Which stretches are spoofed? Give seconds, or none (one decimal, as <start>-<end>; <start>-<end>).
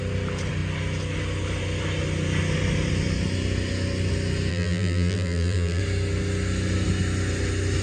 4.5-5.8